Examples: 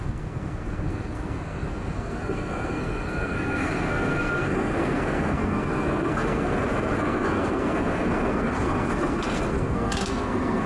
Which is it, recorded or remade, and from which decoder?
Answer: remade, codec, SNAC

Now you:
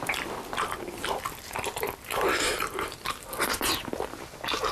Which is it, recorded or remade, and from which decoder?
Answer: recorded